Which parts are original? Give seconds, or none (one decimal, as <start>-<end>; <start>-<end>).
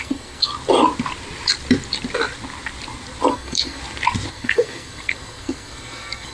0.5-3.3; 3.8-4.3